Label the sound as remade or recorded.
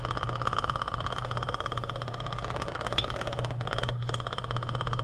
remade